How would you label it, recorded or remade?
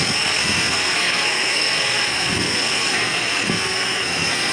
remade